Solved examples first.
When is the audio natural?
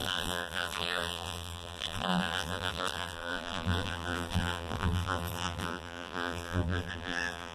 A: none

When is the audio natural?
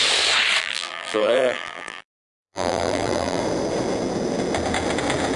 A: 0.0-0.6; 3.4-5.4